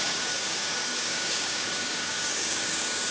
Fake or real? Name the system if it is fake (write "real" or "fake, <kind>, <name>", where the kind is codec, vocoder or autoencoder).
fake, codec, DAC